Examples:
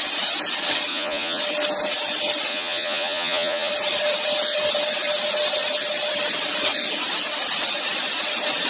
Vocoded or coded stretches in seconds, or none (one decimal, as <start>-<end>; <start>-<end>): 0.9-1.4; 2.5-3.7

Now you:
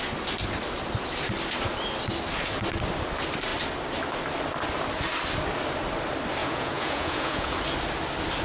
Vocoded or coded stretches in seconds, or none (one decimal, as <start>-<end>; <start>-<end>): 6.4-7.5

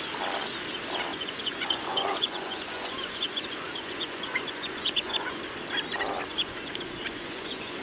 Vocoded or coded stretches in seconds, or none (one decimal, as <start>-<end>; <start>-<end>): 1.1-5.4; 6.3-7.8